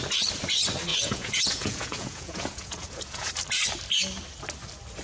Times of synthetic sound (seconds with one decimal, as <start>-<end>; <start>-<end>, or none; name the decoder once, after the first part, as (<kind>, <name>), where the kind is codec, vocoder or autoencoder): 0.9-3.3 (vocoder, Vocos)